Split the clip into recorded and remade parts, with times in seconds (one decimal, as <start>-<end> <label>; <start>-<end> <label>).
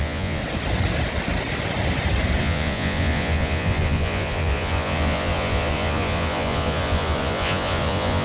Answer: 0.0-0.4 remade; 0.4-2.4 recorded; 2.4-8.2 remade